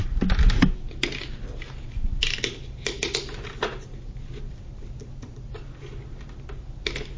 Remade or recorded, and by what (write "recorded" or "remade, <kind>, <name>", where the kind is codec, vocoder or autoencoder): recorded